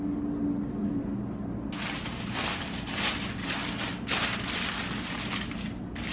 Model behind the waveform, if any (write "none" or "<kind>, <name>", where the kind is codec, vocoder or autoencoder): none